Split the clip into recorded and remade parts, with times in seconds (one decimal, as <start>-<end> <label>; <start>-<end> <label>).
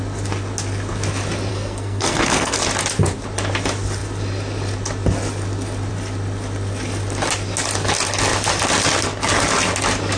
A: 0.0-1.5 recorded; 1.5-2.6 remade; 2.6-10.2 recorded